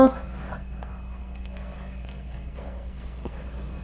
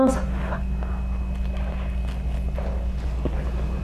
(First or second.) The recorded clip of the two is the second